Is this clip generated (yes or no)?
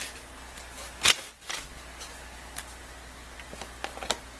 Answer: no